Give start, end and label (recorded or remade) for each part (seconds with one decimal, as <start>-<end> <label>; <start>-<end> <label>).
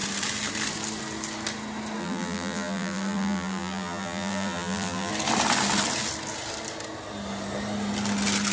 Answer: 0.0-2.0 recorded; 2.0-5.1 remade; 5.1-8.5 recorded